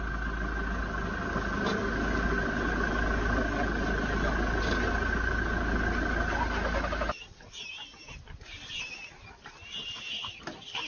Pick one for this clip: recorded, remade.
recorded